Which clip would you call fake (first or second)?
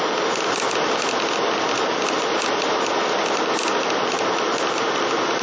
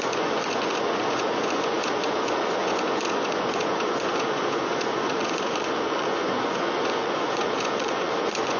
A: second